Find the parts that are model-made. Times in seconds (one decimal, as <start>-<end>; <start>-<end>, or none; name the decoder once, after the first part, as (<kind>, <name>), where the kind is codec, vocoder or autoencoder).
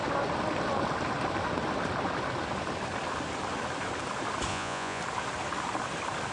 4.5-5.0 (vocoder, Vocos)